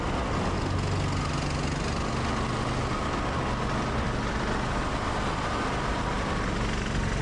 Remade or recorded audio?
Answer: recorded